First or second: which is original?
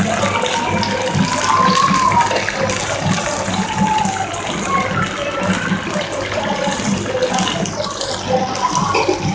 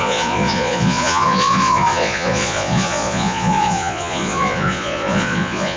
first